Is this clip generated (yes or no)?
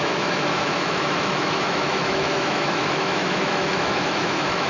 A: yes